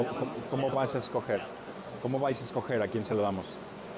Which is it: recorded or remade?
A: remade